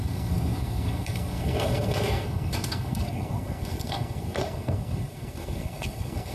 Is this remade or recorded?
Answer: remade